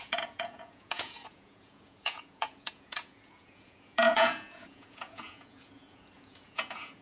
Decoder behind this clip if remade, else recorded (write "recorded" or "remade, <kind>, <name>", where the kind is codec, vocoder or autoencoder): remade, vocoder, Vocos